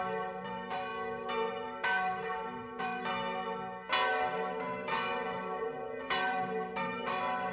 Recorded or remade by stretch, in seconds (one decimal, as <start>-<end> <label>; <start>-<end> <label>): 0.0-0.9 remade; 0.9-1.5 recorded; 1.5-3.1 remade; 3.1-4.1 recorded; 4.1-7.5 remade